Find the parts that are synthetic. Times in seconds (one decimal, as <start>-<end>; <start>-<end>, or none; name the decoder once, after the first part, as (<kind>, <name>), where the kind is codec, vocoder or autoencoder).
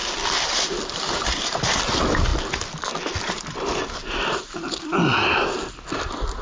none